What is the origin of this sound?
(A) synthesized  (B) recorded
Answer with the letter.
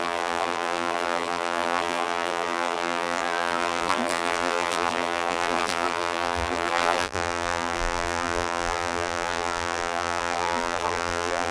A